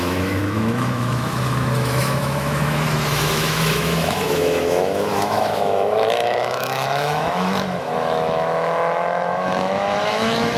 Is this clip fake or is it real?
fake